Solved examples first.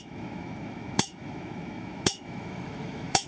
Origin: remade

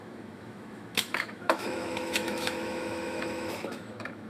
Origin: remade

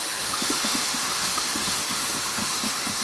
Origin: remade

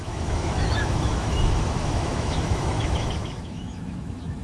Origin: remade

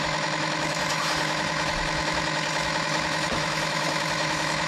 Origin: remade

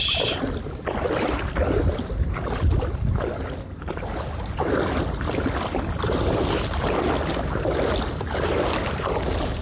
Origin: recorded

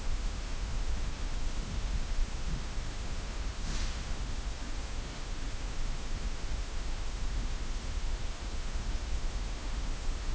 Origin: remade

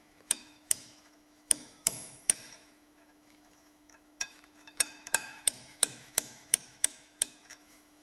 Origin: remade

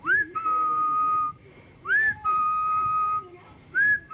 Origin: remade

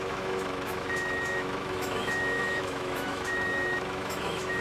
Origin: remade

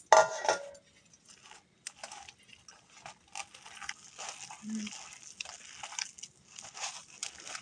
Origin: recorded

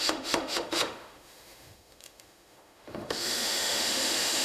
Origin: remade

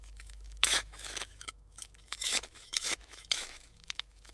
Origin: remade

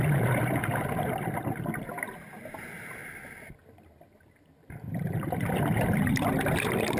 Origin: recorded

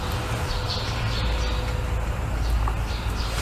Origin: recorded